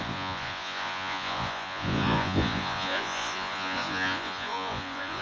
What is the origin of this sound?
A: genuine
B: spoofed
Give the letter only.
B